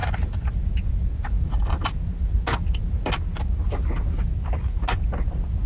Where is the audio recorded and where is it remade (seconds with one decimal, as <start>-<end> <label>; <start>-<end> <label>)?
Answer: 0.0-5.7 recorded